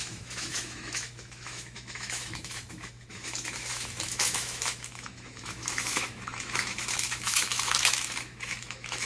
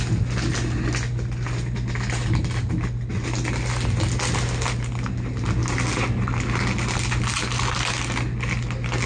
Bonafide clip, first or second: second